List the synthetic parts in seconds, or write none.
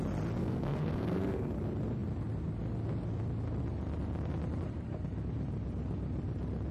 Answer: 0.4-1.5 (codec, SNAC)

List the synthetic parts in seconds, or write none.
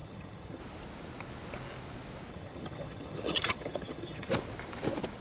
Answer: 0.0-0.6 (vocoder, HiFi-GAN); 2.3-4.3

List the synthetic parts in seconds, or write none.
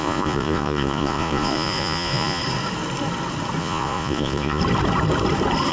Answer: 0.0-2.4 (vocoder, Vocos); 3.6-4.6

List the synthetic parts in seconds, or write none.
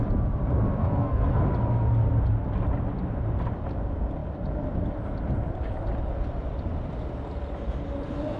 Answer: 0.8-1.4 (codec, SNAC)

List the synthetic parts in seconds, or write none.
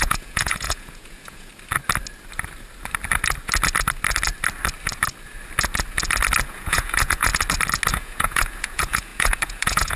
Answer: 0.0-1.5 (vocoder, Vocos); 6.5-7.3; 7.9-10.0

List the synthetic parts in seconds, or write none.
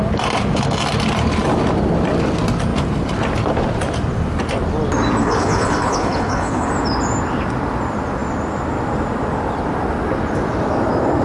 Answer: 5.2-6.7 (codec, HILCodec)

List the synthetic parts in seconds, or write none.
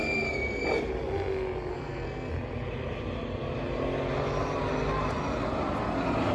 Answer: 1.7-2.3 (codec, SNAC)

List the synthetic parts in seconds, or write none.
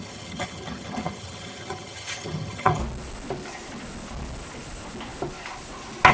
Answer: 0.0-2.8 (vocoder, HiFi-GAN)